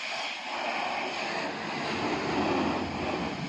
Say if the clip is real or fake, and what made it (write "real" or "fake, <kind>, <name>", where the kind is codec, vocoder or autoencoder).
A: real